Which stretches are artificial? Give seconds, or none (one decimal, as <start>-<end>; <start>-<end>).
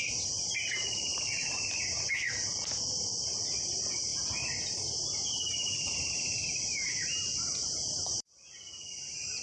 0.0-1.1; 1.7-9.4